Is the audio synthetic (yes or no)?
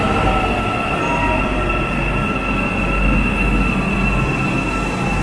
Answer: no